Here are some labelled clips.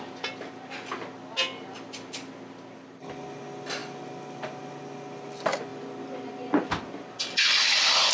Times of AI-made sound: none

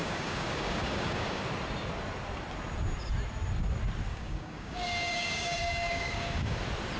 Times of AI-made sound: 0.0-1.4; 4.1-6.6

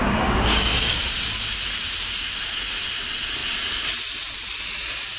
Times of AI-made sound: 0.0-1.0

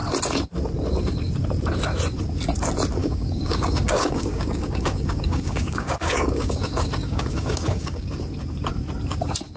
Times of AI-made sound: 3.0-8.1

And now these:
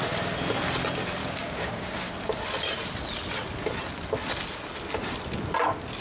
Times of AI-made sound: 1.2-2.1

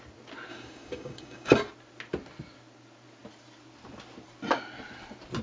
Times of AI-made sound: 0.5-1.5

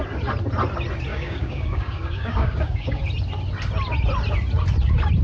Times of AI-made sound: 1.1-3.0

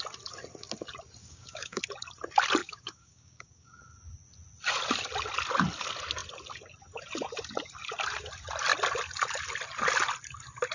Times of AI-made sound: 1.2-1.8; 2.6-3.8